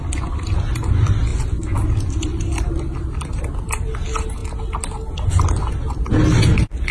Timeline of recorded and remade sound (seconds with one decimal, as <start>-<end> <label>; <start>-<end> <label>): 0.0-6.9 recorded